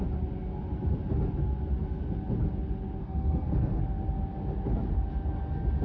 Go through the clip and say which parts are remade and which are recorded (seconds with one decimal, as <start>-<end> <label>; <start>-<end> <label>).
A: 0.0-3.0 recorded; 3.0-3.8 remade; 3.8-5.8 recorded